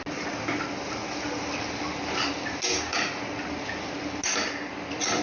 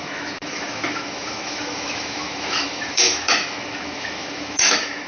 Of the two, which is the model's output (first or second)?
second